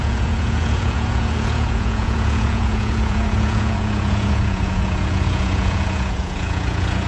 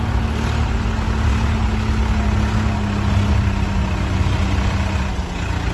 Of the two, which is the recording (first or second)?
second